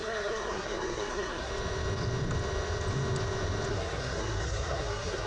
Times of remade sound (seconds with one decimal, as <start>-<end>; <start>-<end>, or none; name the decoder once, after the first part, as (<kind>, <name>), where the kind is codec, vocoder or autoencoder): 0.0-1.5 (codec, SNAC); 3.7-5.3